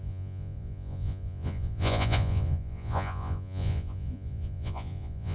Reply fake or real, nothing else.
fake